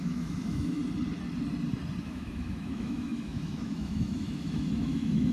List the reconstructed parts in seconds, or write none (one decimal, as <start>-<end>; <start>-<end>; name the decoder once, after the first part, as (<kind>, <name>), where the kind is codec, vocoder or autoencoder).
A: 0.0-0.8 (autoencoder, DAC-VAE); 2.0-5.3